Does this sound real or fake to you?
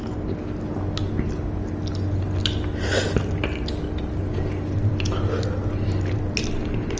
real